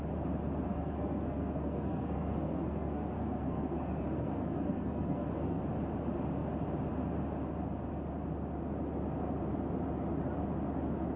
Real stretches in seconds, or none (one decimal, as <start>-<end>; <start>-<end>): 0.0-0.7; 5.6-11.2